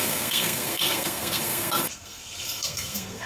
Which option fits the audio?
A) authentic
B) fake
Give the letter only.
B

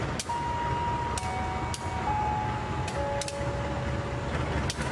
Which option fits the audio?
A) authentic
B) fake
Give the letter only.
A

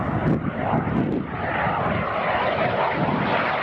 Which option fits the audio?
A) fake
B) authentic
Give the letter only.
B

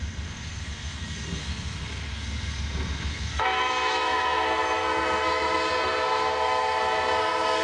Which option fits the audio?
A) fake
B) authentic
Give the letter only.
A